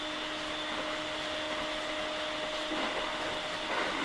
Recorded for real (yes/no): yes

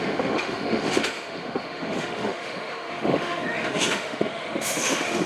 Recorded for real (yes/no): no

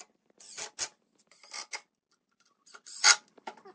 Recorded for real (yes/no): yes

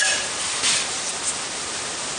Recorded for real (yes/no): yes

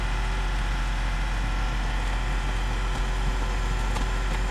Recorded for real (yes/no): yes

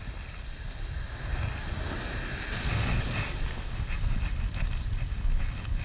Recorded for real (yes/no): yes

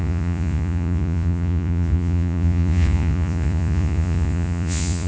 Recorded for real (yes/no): no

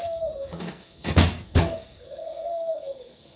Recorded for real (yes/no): no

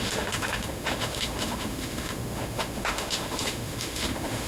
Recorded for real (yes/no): no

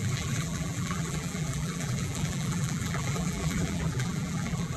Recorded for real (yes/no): no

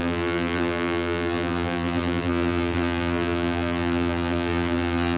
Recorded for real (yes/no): no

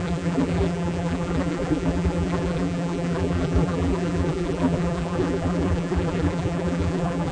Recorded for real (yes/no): no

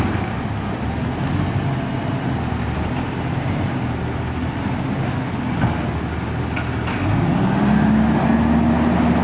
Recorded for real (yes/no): yes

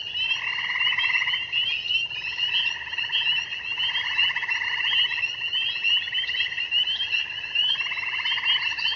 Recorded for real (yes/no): yes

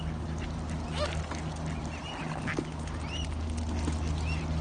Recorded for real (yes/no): yes